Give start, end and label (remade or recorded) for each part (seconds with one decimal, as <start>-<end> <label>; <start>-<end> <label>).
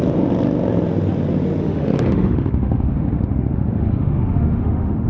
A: 0.0-1.6 recorded; 1.6-5.1 remade